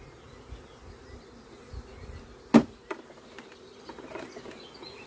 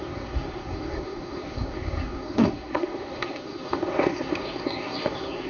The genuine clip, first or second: first